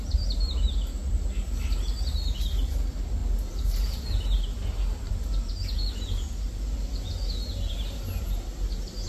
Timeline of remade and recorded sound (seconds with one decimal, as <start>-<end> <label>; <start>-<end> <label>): 0.0-9.1 recorded